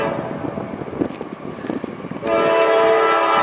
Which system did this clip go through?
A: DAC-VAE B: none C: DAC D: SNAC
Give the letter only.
B